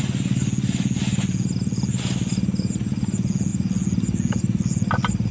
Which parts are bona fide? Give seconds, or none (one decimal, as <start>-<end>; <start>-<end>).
0.0-5.3